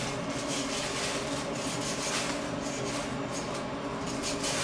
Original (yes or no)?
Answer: yes